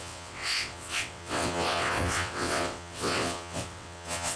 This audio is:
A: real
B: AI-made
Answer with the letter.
B